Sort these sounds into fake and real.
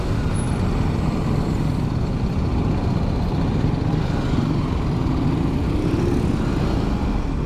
real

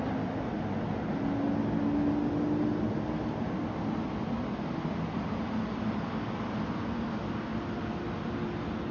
real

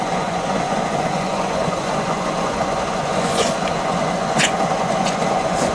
fake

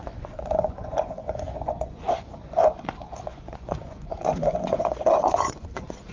fake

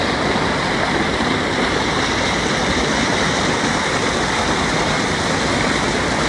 real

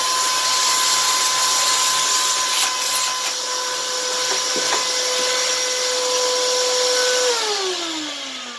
real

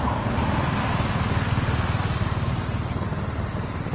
real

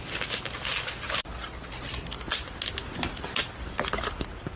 real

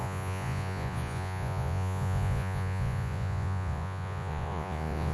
fake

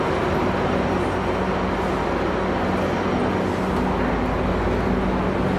real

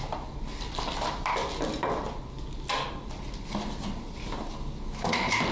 real